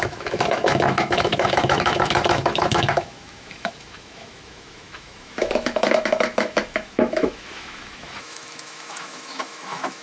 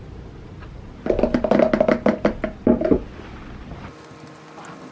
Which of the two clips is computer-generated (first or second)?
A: first